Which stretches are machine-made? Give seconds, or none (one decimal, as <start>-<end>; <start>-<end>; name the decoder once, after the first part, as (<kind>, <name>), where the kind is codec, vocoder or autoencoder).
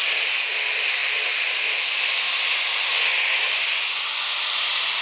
none